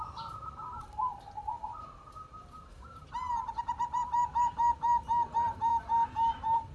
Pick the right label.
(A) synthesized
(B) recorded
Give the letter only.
A